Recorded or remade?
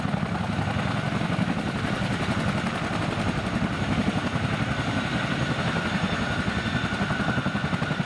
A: recorded